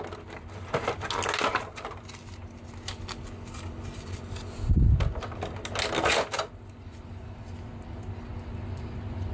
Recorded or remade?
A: recorded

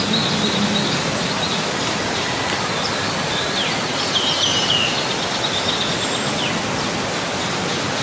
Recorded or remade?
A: recorded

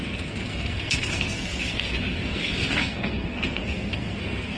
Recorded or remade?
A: remade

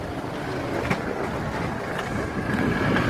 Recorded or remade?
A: recorded